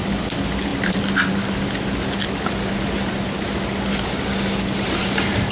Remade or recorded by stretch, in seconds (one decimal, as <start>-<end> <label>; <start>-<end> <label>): 0.0-5.5 recorded